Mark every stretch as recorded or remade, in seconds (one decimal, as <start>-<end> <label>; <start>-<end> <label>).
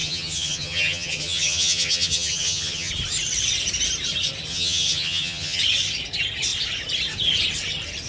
0.0-2.9 remade; 2.9-4.5 recorded; 4.5-5.6 remade; 5.6-8.1 recorded